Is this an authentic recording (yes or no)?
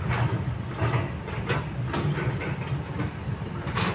yes